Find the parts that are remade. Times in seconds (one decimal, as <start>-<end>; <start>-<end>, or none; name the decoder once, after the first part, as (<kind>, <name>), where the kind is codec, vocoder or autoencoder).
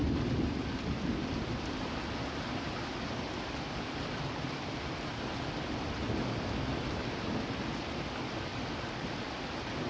1.2-1.7 (vocoder, BigVGAN v2); 5.3-7.0; 8.5-9.0